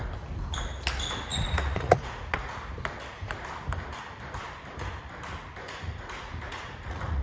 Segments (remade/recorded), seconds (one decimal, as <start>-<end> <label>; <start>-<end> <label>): 0.0-1.3 recorded; 1.3-2.5 remade; 2.5-5.6 recorded; 5.6-7.2 remade